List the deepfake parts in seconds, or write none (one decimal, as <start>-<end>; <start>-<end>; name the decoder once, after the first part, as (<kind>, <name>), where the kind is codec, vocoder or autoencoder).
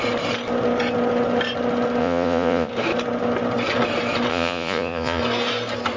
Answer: 2.0-2.7 (vocoder, Vocos); 4.3-5.2